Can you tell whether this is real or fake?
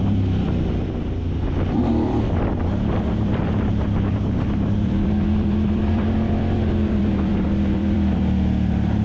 fake